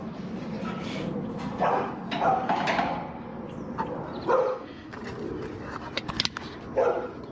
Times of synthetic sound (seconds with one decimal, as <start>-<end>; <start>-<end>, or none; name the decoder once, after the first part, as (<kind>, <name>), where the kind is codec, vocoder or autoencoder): 4.5-5.0 (codec, SNAC)